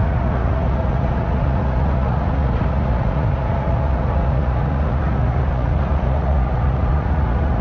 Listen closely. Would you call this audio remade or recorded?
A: remade